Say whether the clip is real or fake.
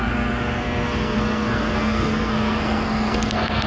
fake